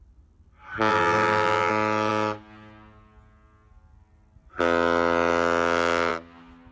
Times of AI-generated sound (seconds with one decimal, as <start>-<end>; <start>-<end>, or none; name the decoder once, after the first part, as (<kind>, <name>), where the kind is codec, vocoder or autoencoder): 0.9-1.7 (vocoder, BigVGAN v2)